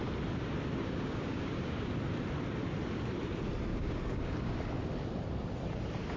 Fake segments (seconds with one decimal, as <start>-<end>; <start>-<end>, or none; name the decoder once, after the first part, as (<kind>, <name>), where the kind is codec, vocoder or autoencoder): 0.8-1.9 (codec, DAC); 3.7-4.6